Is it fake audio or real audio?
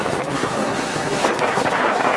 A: fake